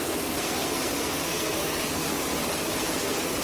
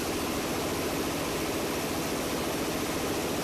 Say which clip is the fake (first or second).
first